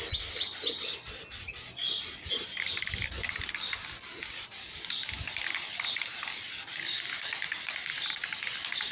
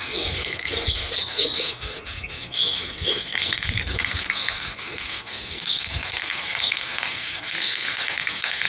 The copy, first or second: second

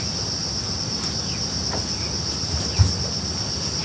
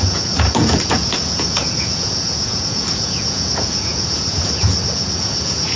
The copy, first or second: second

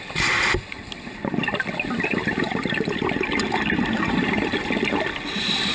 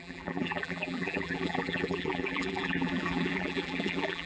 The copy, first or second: second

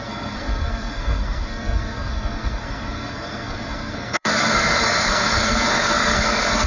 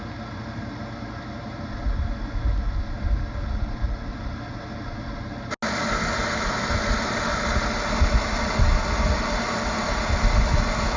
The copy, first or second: first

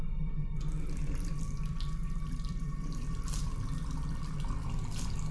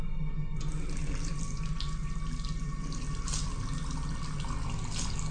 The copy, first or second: first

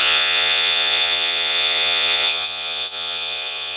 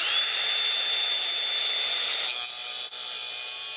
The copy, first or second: first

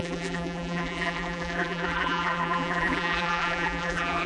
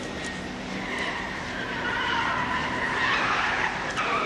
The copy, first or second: first